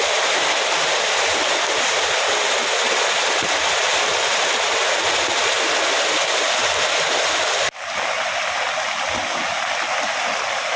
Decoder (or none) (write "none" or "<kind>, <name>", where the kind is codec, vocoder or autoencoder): none